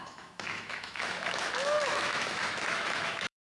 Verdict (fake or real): fake